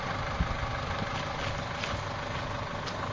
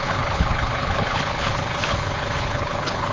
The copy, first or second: second